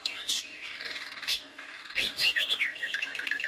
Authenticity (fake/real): fake